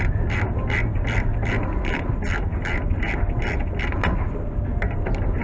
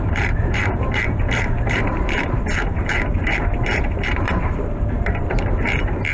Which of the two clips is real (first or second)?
first